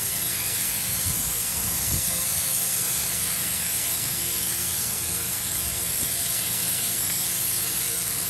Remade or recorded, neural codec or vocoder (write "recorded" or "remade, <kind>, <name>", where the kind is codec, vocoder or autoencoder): remade, codec, SNAC